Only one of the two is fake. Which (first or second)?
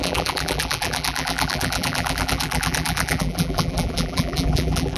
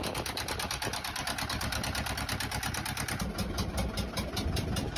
first